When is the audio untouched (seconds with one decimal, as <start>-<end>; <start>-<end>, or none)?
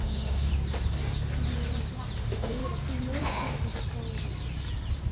0.5-2.2; 2.6-3.2; 3.6-5.1